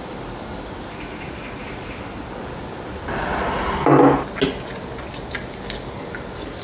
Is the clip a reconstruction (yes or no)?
no